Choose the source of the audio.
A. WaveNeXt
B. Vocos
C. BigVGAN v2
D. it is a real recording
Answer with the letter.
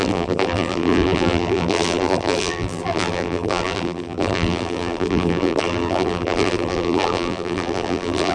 C